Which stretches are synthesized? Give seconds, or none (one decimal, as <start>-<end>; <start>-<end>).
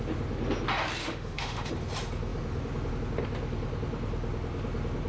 1.0-1.7